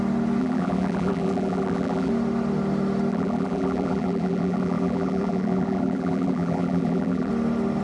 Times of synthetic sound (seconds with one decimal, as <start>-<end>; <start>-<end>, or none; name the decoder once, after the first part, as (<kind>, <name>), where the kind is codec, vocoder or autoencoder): 0.4-2.1 (vocoder, BigVGAN v2); 3.1-7.3